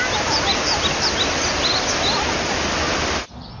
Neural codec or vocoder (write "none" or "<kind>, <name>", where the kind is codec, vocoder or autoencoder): none